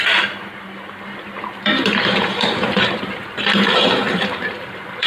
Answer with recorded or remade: remade